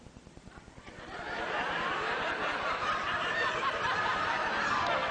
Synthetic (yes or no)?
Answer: yes